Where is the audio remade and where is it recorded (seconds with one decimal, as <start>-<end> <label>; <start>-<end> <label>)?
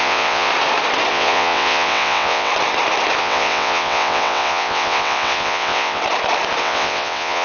0.0-0.5 remade; 0.5-1.1 recorded; 1.1-2.5 remade; 2.5-3.2 recorded; 3.2-6.0 remade; 6.0-6.6 recorded; 6.6-7.4 remade